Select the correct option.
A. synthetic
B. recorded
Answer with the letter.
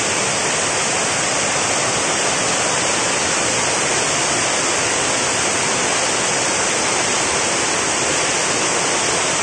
B